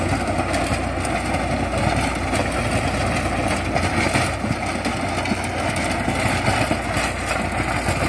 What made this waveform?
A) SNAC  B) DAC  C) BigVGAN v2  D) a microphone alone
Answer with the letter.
D